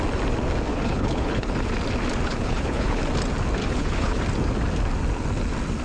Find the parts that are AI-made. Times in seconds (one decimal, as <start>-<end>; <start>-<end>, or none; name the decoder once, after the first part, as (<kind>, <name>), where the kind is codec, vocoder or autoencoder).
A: 0.7-1.5 (codec, HILCodec); 2.3-3.0; 3.6-4.2